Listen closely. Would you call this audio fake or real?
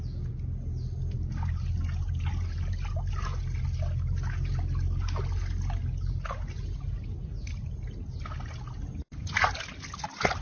real